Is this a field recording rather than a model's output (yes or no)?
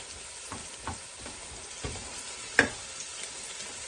yes